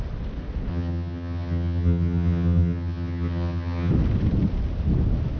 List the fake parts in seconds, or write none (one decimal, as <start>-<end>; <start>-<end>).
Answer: 0.7-3.9